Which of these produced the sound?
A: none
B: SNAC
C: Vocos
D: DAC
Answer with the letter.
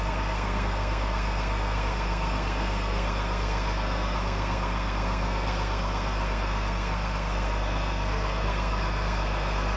B